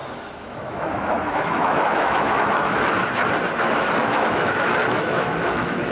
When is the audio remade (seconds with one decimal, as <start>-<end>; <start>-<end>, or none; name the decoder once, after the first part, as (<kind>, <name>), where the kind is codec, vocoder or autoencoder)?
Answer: 0.0-3.0 (autoencoder, DAC-VAE); 4.0-5.9